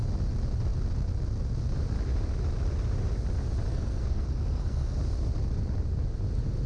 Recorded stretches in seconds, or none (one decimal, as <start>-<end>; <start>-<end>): 0.0-3.7; 5.0-6.7